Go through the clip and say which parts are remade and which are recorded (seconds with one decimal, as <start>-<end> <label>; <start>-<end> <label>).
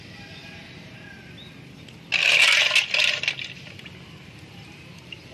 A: 0.0-5.3 recorded